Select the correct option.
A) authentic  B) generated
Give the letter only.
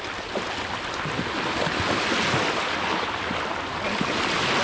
A